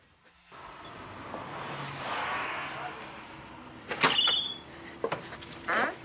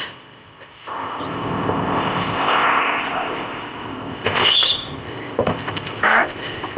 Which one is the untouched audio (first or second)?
first